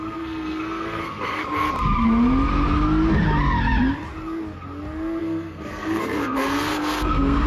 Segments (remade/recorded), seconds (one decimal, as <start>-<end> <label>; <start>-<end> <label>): 0.0-1.4 remade; 1.4-5.2 recorded; 5.2-7.5 remade